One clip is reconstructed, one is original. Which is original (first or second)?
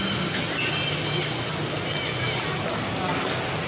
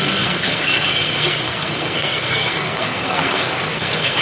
first